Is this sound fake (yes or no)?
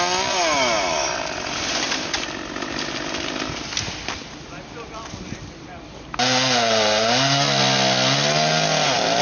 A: no